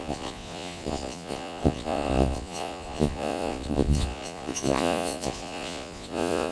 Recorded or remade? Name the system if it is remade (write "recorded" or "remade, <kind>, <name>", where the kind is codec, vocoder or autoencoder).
remade, vocoder, Vocos